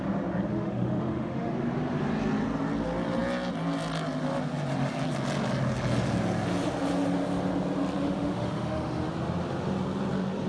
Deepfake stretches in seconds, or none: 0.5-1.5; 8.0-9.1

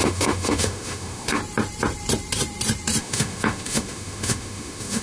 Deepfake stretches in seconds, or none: 0.0-1.4; 3.0-5.0

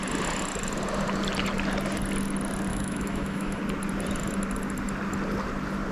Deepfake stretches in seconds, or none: 2.7-3.6